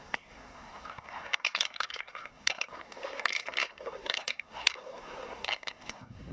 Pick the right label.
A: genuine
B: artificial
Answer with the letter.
B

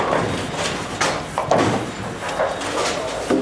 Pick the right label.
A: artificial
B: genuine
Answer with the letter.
B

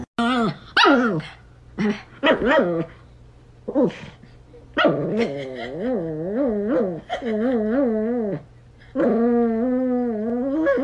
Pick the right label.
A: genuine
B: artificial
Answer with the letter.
A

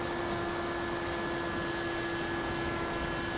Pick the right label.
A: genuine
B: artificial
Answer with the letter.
A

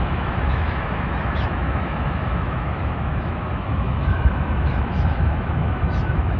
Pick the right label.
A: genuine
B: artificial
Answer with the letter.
B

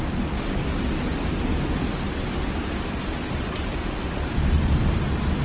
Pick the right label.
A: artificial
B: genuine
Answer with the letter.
B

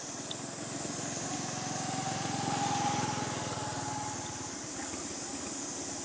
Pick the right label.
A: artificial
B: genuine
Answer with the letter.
B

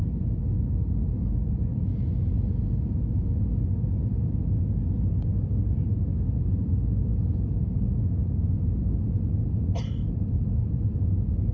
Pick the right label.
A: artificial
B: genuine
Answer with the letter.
B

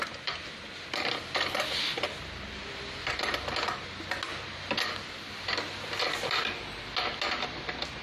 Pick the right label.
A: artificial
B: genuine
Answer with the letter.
B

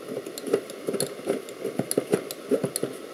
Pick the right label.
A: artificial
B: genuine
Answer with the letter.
B